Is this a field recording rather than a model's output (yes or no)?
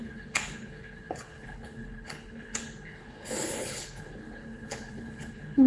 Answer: no